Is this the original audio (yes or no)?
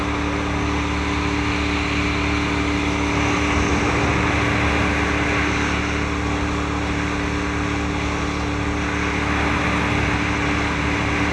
yes